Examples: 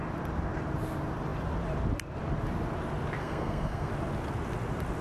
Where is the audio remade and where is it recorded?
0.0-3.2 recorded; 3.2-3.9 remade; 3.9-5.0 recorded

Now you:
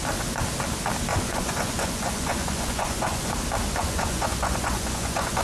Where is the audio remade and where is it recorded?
0.0-1.1 recorded; 1.1-3.3 remade; 3.3-3.8 recorded; 3.8-5.4 remade